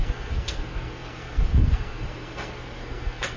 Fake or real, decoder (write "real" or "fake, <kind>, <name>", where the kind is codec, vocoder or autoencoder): fake, codec, SNAC